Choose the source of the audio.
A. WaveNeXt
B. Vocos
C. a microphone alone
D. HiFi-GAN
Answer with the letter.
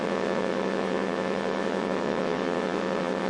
A